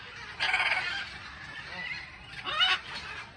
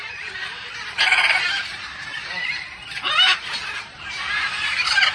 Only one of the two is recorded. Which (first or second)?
first